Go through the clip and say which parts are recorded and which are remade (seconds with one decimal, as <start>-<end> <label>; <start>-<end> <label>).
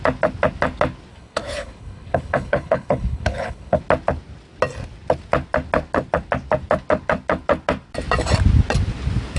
0.0-1.1 recorded; 1.1-3.8 remade; 3.8-9.4 recorded